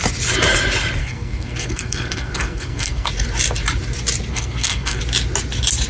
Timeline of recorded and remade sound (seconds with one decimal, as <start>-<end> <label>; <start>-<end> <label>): 0.0-1.0 recorded; 1.0-3.1 remade; 3.1-4.3 recorded; 4.3-5.0 remade; 5.0-5.9 recorded